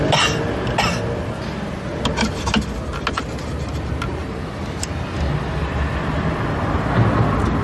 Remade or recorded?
recorded